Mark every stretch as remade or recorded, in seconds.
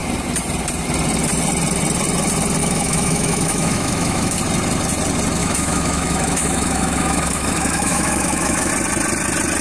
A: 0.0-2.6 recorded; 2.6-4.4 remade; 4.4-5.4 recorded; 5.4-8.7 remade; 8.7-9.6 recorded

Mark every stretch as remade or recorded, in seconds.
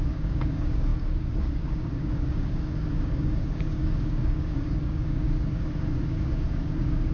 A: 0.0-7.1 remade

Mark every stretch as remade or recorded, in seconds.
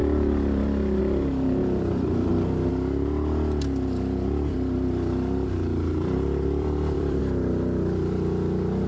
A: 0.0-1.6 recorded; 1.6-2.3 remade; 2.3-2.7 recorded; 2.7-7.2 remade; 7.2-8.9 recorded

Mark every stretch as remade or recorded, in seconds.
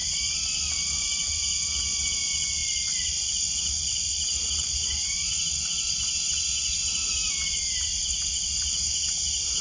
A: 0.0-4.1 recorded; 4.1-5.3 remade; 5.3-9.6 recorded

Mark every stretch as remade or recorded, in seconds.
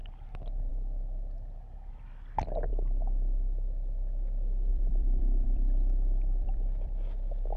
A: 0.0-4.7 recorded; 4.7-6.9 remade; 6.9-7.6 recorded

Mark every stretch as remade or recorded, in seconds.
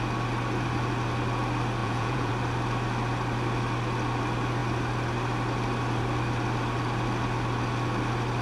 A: 0.0-1.8 recorded; 1.8-2.3 remade; 2.3-8.4 recorded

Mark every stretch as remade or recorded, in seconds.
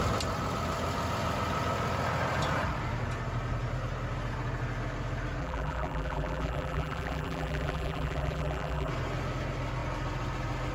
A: 0.0-5.4 recorded; 5.4-8.9 remade; 8.9-10.7 recorded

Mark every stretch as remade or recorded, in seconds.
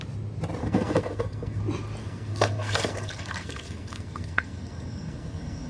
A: 0.0-0.6 recorded; 0.6-1.6 remade; 1.6-2.0 recorded; 2.0-5.7 remade